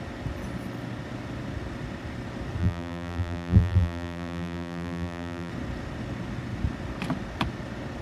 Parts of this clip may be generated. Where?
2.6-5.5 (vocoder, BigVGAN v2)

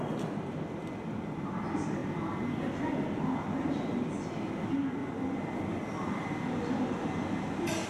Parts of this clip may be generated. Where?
5.0-6.4 (vocoder, BigVGAN v2)

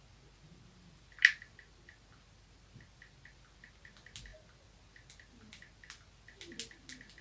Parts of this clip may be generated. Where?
none